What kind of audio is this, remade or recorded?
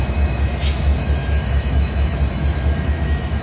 remade